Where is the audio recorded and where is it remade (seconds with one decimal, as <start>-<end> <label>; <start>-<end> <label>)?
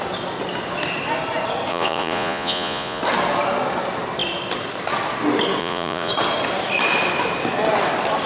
0.0-1.7 recorded; 1.7-3.0 remade; 3.0-5.6 recorded; 5.6-6.1 remade; 6.1-8.3 recorded